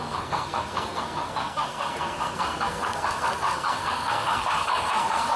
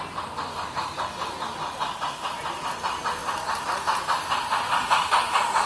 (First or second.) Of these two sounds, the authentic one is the second